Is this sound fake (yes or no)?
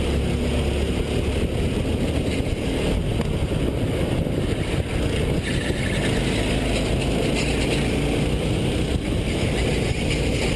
no